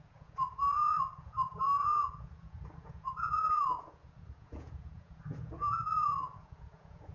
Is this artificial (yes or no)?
yes